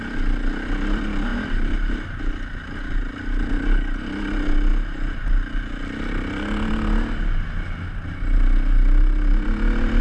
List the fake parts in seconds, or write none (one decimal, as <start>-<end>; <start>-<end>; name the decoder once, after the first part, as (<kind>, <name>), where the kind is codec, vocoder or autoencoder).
none